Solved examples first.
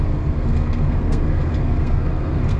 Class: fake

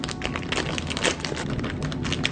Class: real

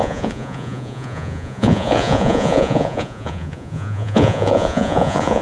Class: fake